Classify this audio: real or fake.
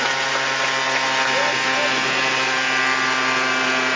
real